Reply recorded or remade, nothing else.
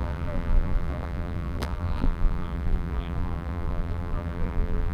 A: remade